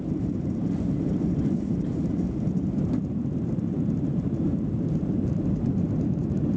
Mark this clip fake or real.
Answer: fake